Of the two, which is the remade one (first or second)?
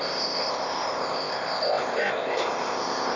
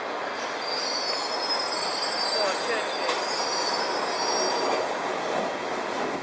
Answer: first